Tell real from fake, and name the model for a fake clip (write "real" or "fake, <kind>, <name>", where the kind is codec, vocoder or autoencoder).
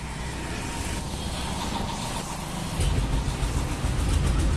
real